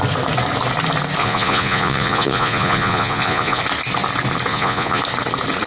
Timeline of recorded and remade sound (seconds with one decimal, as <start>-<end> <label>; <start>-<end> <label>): 0.0-1.2 recorded; 1.2-3.6 remade; 3.6-4.5 recorded; 4.5-5.0 remade; 5.0-5.7 recorded